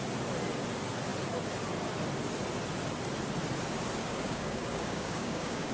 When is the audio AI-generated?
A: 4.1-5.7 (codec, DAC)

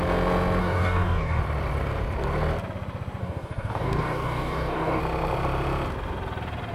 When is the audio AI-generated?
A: 0.6-1.4 (codec, DAC); 3.2-5.0